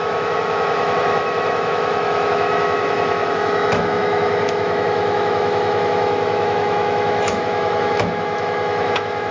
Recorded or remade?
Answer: remade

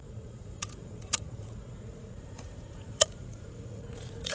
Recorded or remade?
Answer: remade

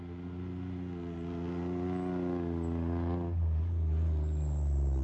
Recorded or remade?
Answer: recorded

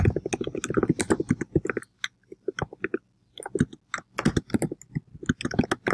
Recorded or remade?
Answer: recorded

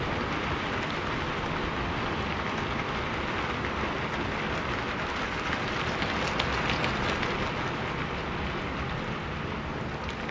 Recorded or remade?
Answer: recorded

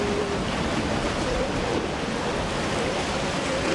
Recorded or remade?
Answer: recorded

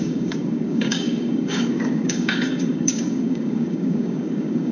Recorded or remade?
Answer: remade